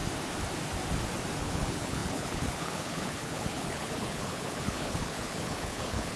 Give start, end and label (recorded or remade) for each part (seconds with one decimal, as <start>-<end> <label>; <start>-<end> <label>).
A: 0.0-1.4 recorded; 1.4-6.2 remade